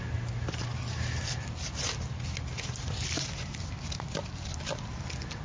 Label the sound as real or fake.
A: real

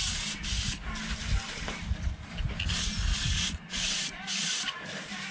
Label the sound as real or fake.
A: real